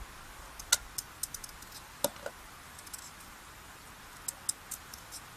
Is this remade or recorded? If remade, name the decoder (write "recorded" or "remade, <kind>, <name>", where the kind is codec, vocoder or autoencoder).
recorded